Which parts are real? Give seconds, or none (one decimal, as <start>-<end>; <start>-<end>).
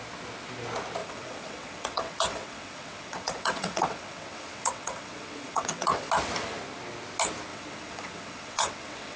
0.0-1.0; 6.1-7.5